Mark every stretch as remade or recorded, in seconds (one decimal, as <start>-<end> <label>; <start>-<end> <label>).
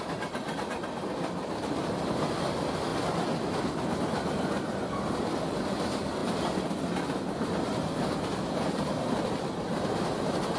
0.0-2.9 remade; 2.9-4.0 recorded; 4.0-10.6 remade